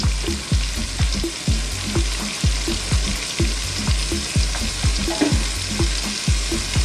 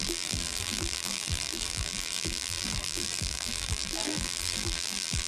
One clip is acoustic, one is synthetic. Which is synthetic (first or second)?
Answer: second